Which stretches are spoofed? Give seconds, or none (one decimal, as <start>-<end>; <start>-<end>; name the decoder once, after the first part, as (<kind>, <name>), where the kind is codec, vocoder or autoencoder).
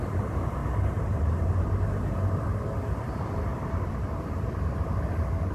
none